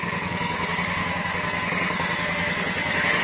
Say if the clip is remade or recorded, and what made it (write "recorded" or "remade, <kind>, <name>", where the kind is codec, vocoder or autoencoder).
remade, codec, SNAC